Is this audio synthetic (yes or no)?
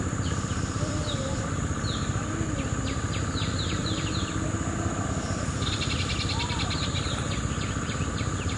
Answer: no